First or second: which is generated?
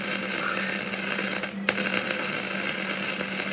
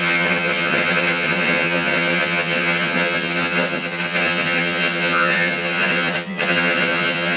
second